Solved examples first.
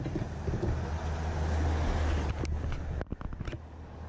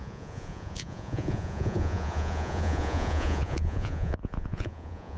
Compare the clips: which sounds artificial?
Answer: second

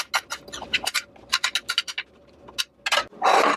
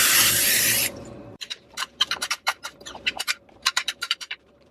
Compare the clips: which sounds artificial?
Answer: second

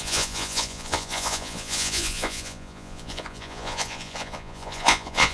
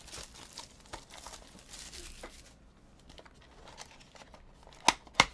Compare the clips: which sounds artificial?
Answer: first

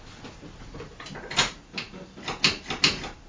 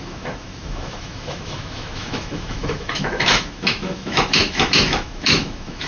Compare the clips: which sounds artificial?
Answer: second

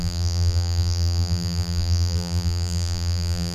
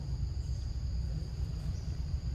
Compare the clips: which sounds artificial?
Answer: first